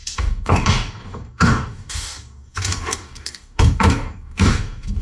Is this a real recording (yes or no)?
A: no